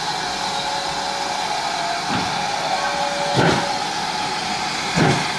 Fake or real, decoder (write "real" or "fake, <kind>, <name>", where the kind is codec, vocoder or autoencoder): real